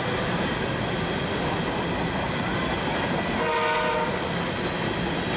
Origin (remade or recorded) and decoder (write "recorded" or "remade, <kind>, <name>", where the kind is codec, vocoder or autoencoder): recorded